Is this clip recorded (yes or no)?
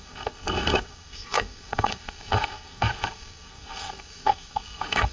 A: no